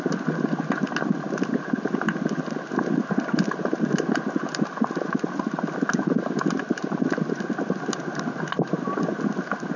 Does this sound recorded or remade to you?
recorded